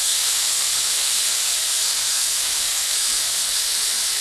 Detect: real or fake fake